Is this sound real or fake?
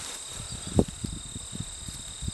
real